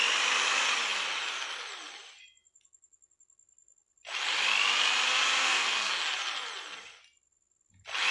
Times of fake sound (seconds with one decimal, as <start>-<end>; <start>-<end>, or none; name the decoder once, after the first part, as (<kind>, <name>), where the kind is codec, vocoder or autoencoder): 5.4-5.9 (codec, SNAC)